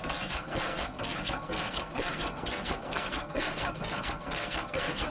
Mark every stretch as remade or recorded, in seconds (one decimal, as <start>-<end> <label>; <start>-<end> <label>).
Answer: 0.0-5.1 remade